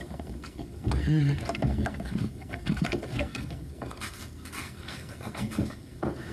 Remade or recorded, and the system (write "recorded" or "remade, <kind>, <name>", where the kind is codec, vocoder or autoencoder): remade, codec, SNAC